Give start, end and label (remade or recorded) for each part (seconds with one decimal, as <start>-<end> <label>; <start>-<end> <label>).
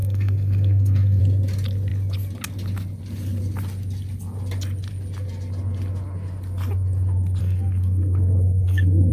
0.0-1.2 remade; 1.2-7.4 recorded; 7.4-9.1 remade